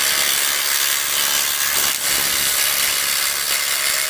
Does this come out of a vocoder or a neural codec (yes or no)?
no